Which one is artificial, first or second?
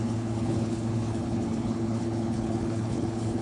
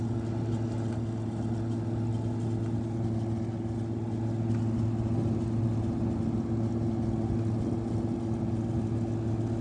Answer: first